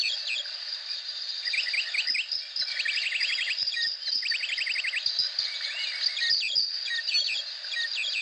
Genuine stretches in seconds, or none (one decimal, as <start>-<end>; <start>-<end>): 0.0-8.2